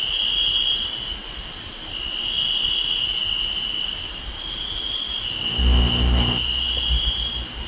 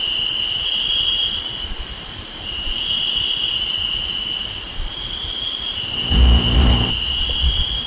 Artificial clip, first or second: second